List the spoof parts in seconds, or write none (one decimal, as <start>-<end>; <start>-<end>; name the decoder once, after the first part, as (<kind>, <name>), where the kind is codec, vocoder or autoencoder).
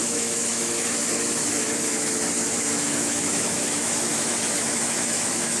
0.0-5.6 (autoencoder, DAC-VAE)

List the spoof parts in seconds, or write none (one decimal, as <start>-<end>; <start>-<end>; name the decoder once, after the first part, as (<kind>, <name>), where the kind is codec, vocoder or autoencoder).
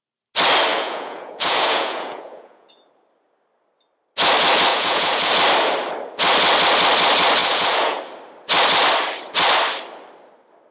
0.7-2.7 (vocoder, Vocos); 4.7-5.3; 7.4-8.0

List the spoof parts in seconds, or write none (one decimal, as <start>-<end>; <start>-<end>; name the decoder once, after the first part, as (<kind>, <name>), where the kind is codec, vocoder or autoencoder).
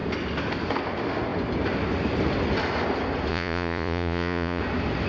3.3-4.6 (vocoder, Vocos)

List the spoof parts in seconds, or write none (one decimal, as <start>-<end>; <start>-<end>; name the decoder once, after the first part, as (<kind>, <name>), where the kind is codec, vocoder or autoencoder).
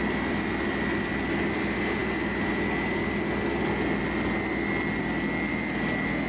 none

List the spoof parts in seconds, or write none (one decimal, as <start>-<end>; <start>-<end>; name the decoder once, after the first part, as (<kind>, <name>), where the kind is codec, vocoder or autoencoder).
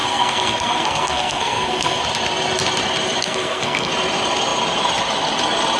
0.0-2.0 (codec, SNAC); 3.2-3.9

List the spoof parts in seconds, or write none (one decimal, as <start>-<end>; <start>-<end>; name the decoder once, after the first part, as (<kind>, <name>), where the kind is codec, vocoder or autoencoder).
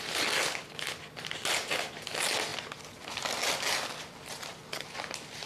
none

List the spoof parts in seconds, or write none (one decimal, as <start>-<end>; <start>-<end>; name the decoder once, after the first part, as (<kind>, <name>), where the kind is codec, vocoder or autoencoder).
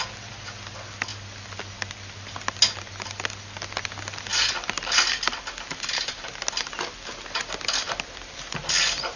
none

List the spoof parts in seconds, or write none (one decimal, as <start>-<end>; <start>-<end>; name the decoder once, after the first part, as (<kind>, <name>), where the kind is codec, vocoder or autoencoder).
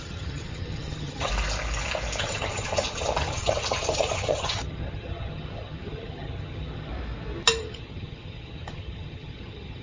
0.0-1.3 (vocoder, HiFi-GAN); 2.2-6.9; 7.6-9.8